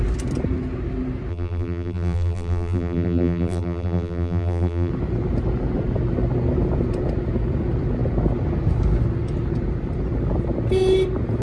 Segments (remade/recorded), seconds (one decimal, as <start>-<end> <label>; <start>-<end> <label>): 0.0-1.3 recorded; 1.3-4.9 remade; 4.9-11.4 recorded